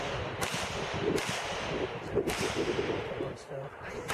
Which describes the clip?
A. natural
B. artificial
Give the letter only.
B